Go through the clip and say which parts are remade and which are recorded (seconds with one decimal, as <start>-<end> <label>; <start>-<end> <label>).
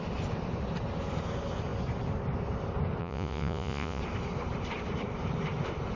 0.0-3.0 recorded; 3.0-4.0 remade; 4.0-6.0 recorded